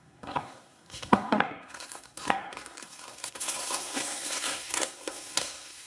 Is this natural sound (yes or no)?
no